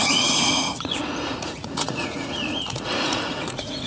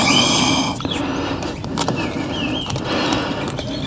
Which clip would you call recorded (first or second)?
second